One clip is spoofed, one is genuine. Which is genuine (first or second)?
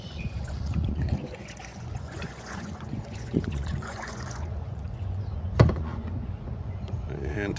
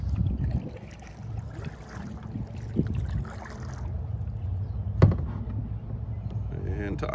second